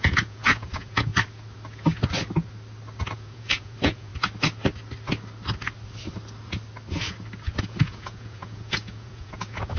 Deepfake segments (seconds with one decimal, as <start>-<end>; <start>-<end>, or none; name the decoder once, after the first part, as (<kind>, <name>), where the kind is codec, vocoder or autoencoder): 0.0-1.1 (vocoder, Vocos); 3.0-4.1; 7.6-9.8